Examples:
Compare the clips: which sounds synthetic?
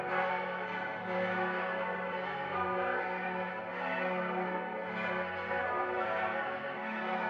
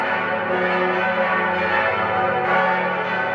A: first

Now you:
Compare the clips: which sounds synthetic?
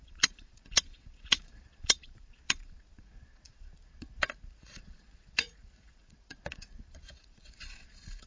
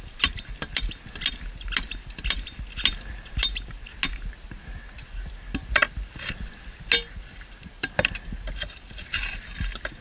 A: first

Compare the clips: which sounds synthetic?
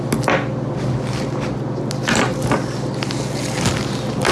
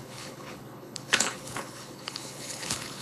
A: second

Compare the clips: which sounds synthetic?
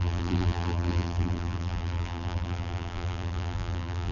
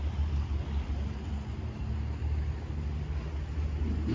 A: first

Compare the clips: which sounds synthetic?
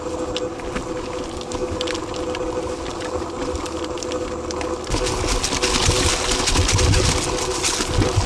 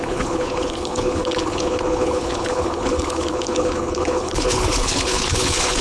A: second